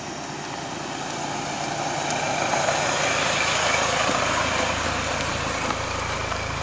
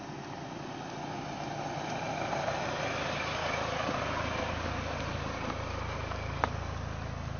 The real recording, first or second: first